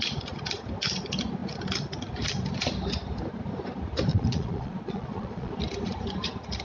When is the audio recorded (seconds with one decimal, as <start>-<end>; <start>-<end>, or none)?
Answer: 0.0-4.1; 5.5-6.6